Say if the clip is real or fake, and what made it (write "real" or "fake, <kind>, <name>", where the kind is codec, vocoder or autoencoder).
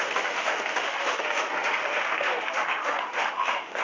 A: fake, autoencoder, DAC-VAE